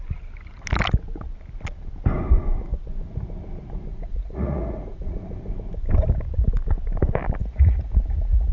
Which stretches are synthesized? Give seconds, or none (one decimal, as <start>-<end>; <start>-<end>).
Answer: 3.9-5.5; 7.4-8.5